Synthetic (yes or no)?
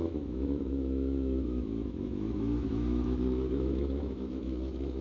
yes